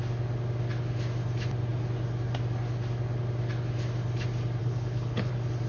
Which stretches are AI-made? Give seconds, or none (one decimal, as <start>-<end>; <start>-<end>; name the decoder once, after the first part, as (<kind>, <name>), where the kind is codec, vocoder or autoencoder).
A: 4.6-5.3 (codec, HILCodec)

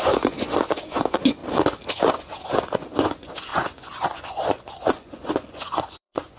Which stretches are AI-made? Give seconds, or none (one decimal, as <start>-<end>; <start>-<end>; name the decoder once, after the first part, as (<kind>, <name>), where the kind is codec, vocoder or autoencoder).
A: 0.0-1.4 (vocoder, Vocos); 1.9-6.4